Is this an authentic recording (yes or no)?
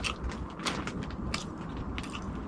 yes